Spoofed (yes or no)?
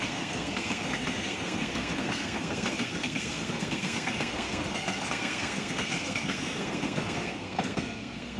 yes